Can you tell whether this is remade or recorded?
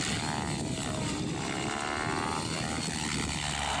recorded